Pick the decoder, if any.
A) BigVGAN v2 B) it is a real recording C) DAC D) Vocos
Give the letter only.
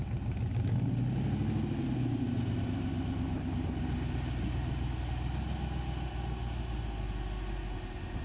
B